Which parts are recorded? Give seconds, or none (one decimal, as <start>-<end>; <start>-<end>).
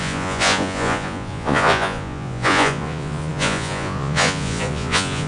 none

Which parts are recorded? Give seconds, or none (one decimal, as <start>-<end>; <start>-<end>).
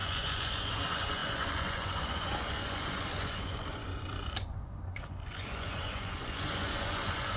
none